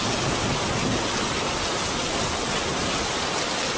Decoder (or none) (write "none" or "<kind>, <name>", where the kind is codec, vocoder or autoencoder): none